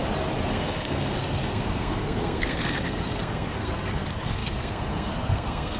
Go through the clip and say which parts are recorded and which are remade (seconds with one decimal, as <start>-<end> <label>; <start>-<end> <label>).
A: 0.0-0.5 recorded; 0.5-5.8 remade